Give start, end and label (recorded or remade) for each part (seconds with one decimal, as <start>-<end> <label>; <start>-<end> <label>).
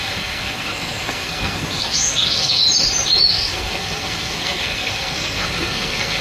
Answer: 0.0-2.6 remade; 2.6-3.3 recorded; 3.3-6.2 remade